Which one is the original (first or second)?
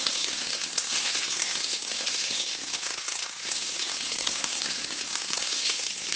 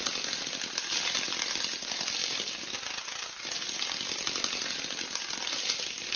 second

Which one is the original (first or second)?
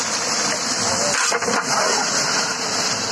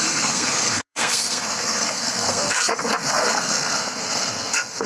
first